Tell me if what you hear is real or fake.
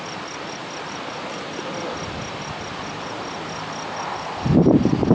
real